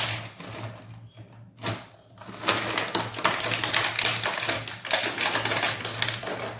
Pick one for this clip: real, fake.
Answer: real